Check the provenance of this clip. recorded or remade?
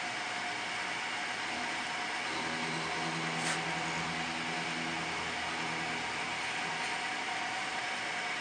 recorded